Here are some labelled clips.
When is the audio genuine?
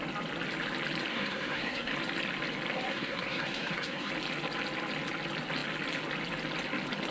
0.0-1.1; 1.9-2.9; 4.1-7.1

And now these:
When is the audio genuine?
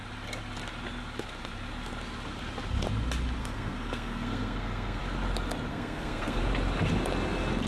0.0-3.4; 5.0-5.7; 6.4-7.7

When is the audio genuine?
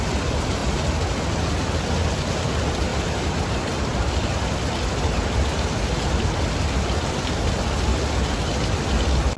0.0-2.9; 6.2-9.4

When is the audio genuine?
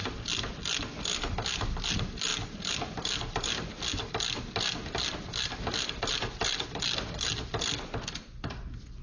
0.0-9.0